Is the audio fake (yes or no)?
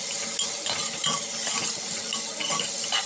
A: no